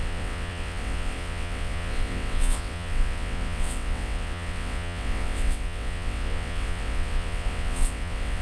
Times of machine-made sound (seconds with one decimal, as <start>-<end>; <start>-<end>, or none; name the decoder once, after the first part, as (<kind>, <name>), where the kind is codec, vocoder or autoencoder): 0.0-8.4 (vocoder, WaveNeXt)